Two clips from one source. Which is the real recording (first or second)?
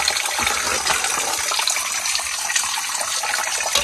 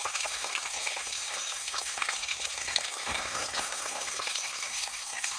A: first